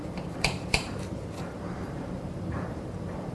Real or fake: fake